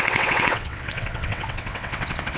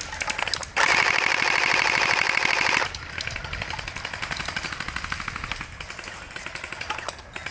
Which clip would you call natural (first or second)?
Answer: second